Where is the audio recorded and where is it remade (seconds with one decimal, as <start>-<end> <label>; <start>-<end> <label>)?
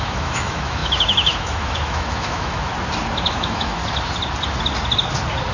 0.0-2.7 remade; 2.7-3.3 recorded; 3.3-3.8 remade; 3.8-5.5 recorded